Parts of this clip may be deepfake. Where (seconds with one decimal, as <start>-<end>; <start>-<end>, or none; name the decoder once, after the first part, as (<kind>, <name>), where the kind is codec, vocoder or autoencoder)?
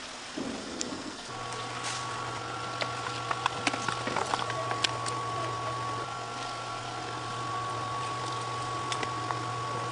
0.6-1.3 (codec, SNAC)